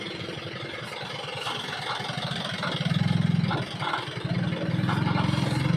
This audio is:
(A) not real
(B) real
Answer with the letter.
B